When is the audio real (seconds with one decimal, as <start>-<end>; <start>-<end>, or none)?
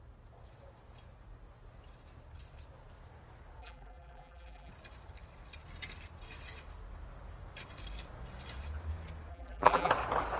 0.0-3.6; 4.7-9.3; 9.9-10.4